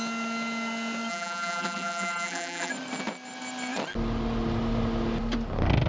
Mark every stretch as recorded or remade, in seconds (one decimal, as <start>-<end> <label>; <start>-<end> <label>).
0.0-1.1 recorded; 1.1-2.7 remade; 2.7-5.9 recorded